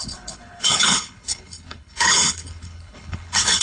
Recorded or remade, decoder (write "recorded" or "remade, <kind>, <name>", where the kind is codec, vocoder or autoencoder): remade, codec, HILCodec